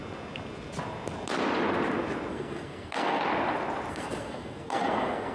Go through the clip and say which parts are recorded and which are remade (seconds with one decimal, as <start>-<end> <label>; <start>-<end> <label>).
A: 0.0-2.3 recorded; 2.3-3.2 remade; 3.2-3.9 recorded; 3.9-5.3 remade